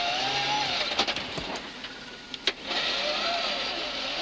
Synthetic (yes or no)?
no